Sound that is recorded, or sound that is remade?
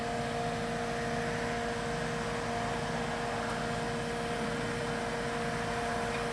recorded